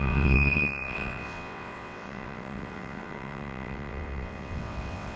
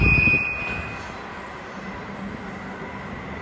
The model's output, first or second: first